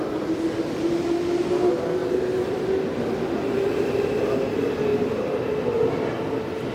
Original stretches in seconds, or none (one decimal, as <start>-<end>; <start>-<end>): 0.0-6.7